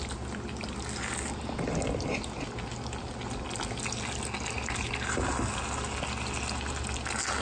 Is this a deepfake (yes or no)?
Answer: no